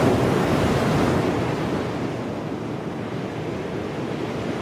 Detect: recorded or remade recorded